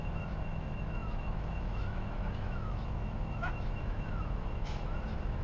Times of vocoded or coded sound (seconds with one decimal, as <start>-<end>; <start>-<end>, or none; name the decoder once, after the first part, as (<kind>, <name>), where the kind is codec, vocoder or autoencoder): 0.0-5.4 (autoencoder, DAC-VAE)